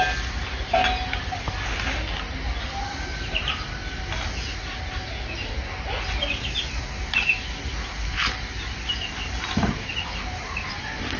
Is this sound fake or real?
real